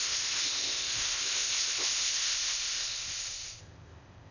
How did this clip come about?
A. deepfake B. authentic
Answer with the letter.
A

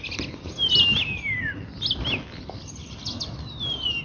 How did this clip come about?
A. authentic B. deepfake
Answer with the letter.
A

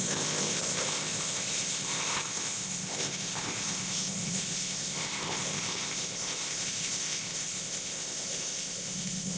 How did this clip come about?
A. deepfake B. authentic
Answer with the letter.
A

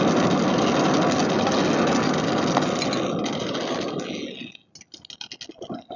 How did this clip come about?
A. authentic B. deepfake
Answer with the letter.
A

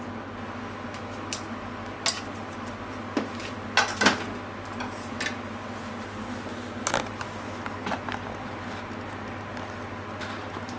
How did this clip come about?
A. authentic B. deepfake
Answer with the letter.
A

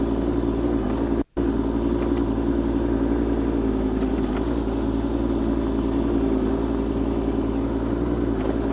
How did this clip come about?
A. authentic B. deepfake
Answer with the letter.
A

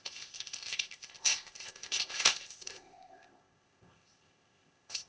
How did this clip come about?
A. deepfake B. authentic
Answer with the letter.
A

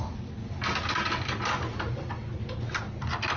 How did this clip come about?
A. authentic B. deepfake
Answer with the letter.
A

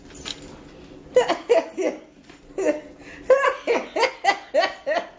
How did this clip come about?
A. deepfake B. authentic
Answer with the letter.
B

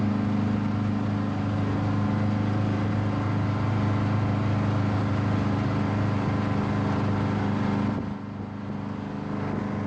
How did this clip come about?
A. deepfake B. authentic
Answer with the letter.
B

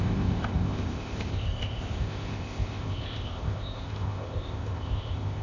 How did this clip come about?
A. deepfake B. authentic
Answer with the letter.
A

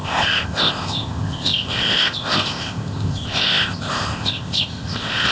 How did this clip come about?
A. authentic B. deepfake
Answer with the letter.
B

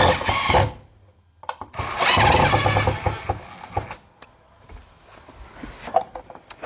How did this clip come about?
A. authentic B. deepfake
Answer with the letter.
A